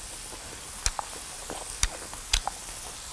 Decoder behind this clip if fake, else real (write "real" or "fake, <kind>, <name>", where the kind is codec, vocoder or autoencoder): real